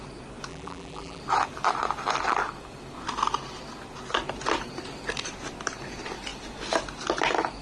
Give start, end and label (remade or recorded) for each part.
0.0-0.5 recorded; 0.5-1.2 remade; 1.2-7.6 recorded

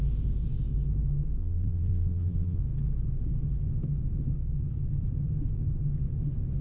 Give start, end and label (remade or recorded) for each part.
0.0-1.4 recorded; 1.4-2.6 remade; 2.6-6.6 recorded

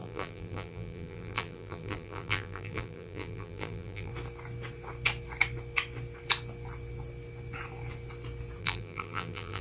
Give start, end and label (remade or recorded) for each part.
0.0-4.1 remade; 4.1-8.6 recorded; 8.6-9.6 remade

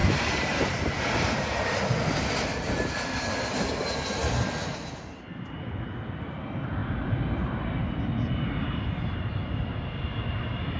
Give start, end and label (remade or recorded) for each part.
0.0-1.8 remade; 1.8-10.8 recorded

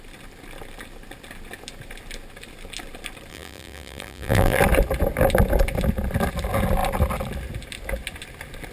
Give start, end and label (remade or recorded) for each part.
0.0-3.3 recorded; 3.3-4.6 remade; 4.6-8.7 recorded